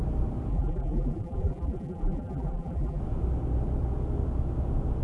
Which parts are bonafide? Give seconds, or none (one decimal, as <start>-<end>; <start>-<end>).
0.0-0.5; 3.0-5.0